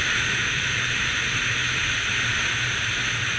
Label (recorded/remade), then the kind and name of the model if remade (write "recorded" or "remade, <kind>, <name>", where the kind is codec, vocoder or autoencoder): remade, vocoder, BigVGAN v2